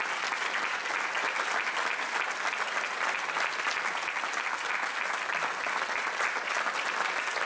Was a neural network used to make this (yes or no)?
no